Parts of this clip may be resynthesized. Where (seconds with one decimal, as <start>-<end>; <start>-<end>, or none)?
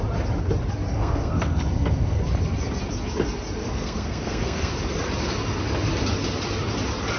0.9-2.2; 3.6-4.7